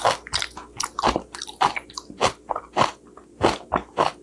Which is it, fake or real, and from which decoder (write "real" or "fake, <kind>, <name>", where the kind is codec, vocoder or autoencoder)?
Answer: real